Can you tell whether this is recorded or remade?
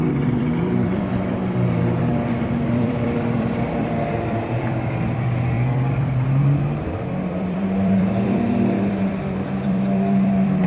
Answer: remade